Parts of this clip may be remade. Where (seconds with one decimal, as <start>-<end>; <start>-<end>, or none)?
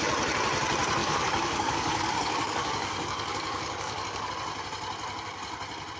1.0-4.3